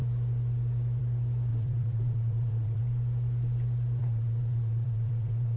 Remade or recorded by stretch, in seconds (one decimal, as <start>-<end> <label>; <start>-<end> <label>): 0.0-1.5 recorded; 1.5-2.8 remade; 2.8-4.0 recorded; 4.0-5.6 remade